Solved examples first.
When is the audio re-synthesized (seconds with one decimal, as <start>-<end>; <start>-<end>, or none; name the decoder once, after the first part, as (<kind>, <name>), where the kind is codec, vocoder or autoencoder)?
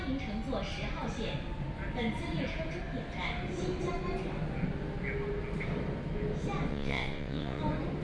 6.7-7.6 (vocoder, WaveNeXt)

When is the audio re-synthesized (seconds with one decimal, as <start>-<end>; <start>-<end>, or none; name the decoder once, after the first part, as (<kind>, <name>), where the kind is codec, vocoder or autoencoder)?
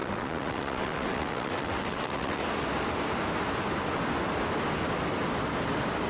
0.0-2.4 (vocoder, WaveNeXt)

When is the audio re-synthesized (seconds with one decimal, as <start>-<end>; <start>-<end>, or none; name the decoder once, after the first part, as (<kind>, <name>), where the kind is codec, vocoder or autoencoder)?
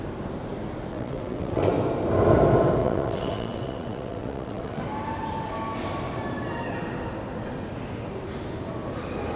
0.9-1.7 (vocoder, WaveNeXt); 2.8-4.8